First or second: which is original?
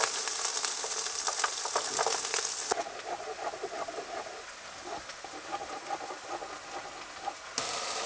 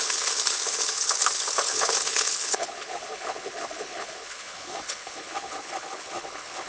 first